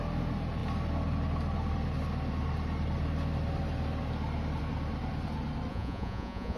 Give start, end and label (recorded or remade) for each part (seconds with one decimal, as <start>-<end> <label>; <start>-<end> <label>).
0.0-5.7 recorded; 5.7-6.6 remade